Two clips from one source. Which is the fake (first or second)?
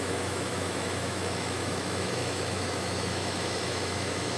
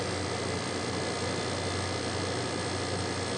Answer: first